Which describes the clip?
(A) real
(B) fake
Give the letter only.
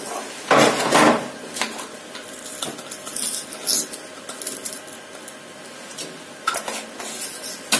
A